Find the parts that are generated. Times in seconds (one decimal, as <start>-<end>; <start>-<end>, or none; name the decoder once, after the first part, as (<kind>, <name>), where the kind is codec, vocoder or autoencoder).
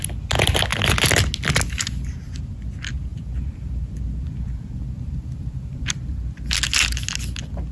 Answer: 3.1-6.4 (vocoder, BigVGAN v2)